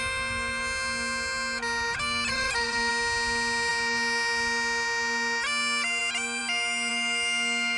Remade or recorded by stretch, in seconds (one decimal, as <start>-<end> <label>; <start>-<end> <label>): 0.0-2.3 recorded; 2.3-2.9 remade; 2.9-7.8 recorded